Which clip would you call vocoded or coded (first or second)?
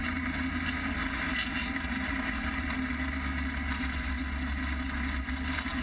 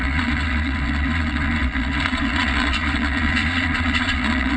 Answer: second